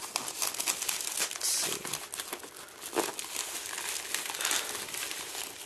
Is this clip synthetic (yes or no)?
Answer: no